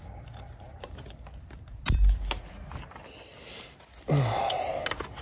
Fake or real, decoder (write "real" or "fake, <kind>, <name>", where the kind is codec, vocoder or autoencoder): real